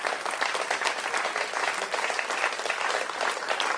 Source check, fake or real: real